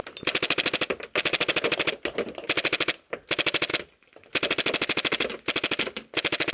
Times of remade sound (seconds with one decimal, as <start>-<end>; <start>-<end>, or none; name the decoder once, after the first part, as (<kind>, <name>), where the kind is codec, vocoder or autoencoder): none